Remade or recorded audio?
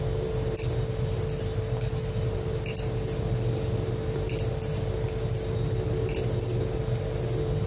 recorded